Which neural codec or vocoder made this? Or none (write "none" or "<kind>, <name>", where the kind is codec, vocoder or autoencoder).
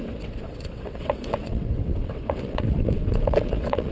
vocoder, WaveNeXt